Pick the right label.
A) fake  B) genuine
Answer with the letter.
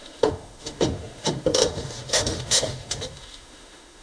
A